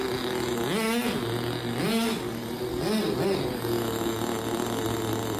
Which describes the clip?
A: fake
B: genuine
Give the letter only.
B